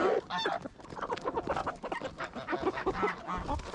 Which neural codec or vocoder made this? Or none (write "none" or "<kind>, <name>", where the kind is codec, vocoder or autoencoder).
none